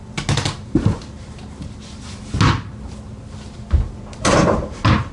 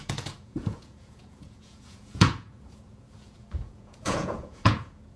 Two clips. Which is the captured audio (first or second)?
first